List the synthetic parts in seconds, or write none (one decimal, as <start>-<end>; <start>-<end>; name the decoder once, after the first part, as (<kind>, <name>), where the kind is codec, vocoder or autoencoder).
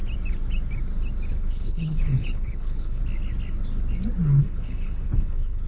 1.3-3.0 (codec, HILCodec); 4.4-5.7